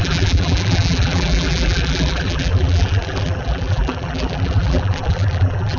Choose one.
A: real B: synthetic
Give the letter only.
B